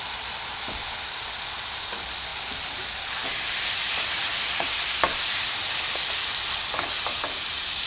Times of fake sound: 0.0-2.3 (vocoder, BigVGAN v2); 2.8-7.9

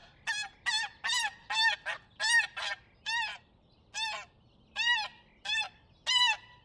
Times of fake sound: none

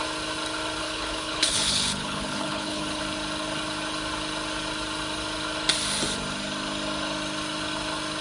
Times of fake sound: 0.8-3.0 (codec, HILCodec)

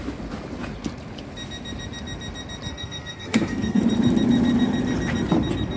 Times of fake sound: 2.7-3.8 (codec, SNAC)

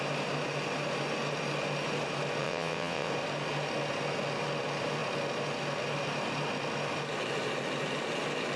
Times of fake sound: 2.4-3.1 (vocoder, WaveNeXt)